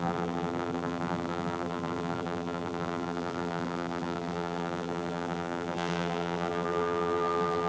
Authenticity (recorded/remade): remade